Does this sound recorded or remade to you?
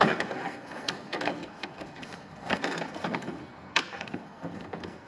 remade